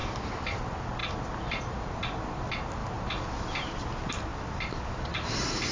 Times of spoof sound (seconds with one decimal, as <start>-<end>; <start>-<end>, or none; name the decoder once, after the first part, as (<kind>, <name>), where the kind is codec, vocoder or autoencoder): 0.0-0.6 (vocoder, BigVGAN v2)